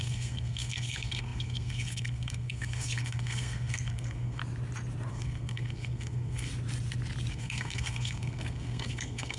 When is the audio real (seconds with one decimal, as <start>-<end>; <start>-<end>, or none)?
4.4-5.1; 6.5-7.3